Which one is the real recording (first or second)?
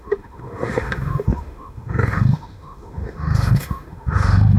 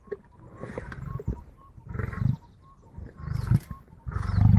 second